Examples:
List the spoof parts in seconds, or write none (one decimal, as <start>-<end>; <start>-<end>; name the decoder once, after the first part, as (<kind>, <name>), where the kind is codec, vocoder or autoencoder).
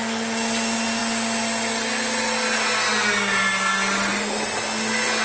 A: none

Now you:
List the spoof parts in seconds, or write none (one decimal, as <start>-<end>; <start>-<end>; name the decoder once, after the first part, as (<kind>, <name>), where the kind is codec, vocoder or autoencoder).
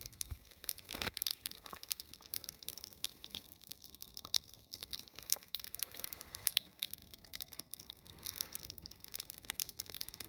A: 0.0-10.3 (codec, SNAC)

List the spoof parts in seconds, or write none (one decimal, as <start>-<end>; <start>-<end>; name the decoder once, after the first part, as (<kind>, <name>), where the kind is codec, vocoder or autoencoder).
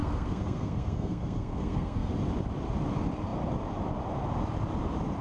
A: 0.0-2.1 (codec, SNAC)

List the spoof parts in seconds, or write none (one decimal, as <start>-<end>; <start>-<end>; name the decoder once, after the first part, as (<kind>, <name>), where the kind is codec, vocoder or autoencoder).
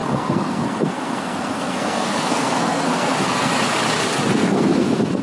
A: 0.0-3.5 (codec, SNAC); 4.3-5.2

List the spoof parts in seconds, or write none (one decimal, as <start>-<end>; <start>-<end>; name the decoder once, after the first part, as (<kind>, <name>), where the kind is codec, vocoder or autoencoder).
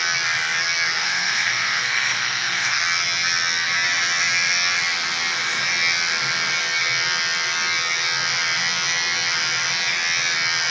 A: 1.0-2.8 (codec, SNAC)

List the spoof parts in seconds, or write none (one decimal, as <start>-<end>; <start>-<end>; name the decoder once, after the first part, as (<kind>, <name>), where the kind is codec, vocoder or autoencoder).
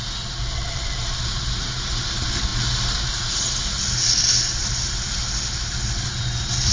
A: none